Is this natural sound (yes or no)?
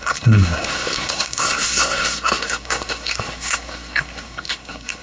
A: no